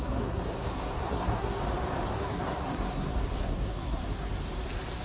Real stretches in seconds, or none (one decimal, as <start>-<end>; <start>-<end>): 1.6-2.1; 4.3-5.0